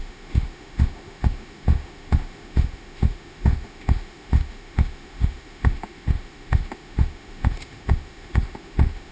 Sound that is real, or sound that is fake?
fake